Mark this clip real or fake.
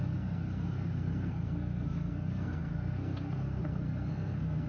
fake